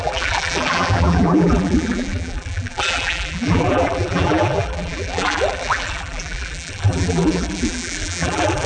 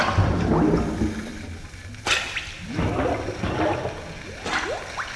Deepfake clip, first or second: first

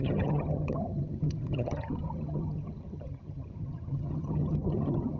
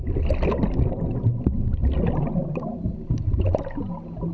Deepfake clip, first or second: first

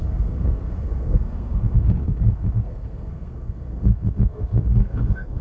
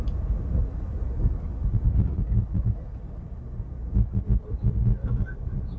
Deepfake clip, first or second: first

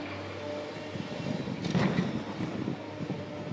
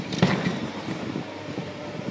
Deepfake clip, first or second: second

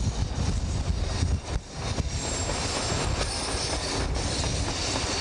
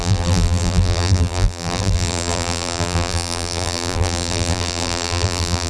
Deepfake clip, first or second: second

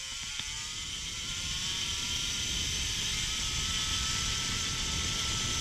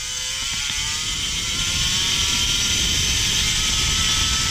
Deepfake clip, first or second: first